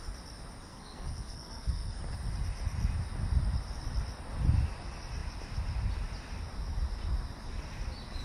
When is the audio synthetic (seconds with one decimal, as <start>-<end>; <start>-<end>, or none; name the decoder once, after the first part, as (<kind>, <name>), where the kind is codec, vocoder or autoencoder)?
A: 0.7-2.0 (codec, SNAC)